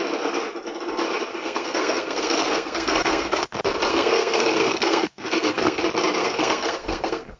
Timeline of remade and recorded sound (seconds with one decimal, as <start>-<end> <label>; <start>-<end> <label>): 0.0-1.3 recorded; 1.3-3.5 remade; 3.5-3.9 recorded; 3.9-5.8 remade; 5.8-6.2 recorded; 6.2-7.4 remade